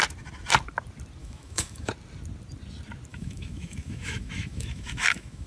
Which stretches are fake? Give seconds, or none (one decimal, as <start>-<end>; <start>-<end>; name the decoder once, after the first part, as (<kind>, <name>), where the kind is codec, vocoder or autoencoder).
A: 1.2-1.9 (autoencoder, DAC-VAE); 3.1-5.5